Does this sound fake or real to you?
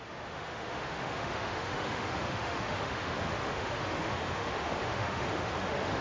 fake